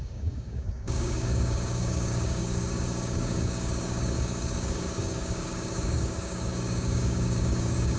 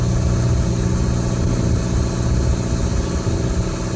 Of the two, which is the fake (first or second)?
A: first